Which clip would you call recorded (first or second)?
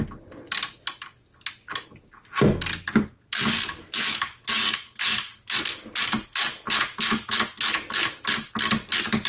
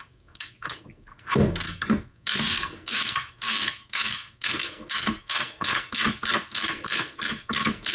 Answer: first